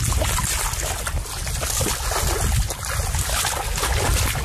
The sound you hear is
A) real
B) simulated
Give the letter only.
A